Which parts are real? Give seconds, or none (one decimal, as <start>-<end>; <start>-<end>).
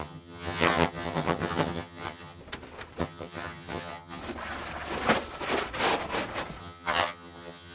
2.4-3.0; 4.2-6.6